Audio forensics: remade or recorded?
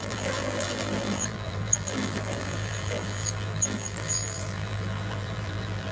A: remade